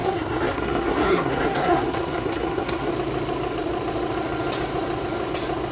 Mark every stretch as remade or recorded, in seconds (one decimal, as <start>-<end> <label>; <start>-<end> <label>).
0.0-2.9 remade; 2.9-5.7 recorded